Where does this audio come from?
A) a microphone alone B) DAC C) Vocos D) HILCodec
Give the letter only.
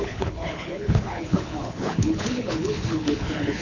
D